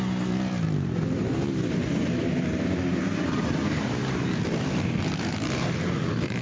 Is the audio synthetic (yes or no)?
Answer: yes